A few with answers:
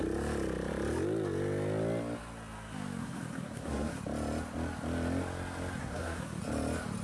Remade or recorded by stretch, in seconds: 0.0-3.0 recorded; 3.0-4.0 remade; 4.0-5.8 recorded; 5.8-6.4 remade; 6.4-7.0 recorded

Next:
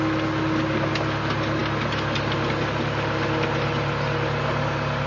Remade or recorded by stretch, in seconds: 0.0-5.1 recorded

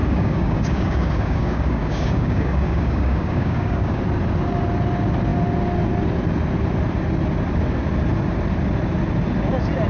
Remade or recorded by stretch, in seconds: 0.0-4.0 remade; 4.0-9.9 recorded